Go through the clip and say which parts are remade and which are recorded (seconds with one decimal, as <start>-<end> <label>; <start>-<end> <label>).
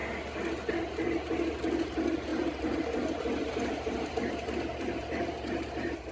0.0-2.3 recorded; 2.3-6.1 remade